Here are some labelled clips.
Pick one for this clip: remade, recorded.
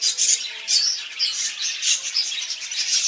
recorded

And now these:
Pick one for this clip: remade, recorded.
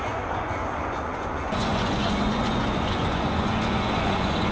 remade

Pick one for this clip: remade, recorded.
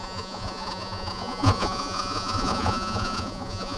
remade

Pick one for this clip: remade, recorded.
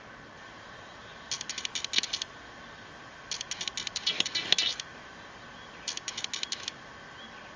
recorded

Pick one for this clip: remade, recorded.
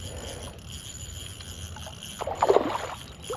recorded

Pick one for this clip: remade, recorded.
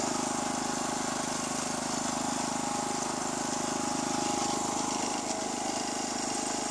recorded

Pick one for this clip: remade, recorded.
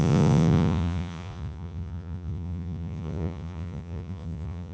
remade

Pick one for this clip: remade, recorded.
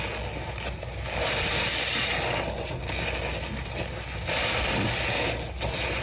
recorded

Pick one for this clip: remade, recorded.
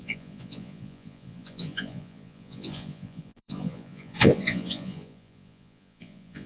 remade